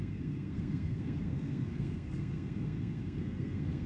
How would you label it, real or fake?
fake